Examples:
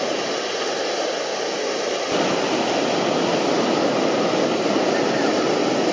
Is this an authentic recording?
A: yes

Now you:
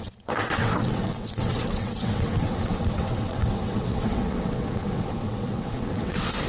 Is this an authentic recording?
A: no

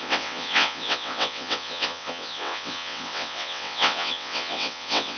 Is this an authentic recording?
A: no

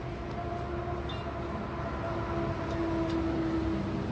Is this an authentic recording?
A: yes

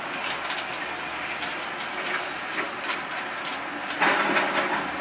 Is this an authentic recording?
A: yes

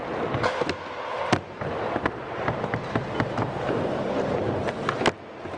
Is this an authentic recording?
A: yes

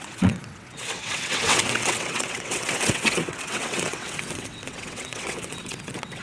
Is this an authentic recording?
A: no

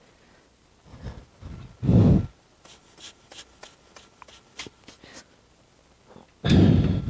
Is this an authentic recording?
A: yes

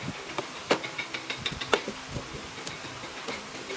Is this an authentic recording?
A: yes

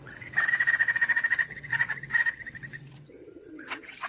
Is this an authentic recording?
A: no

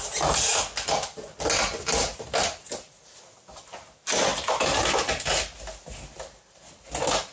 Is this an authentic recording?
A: yes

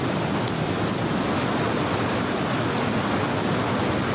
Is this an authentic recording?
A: yes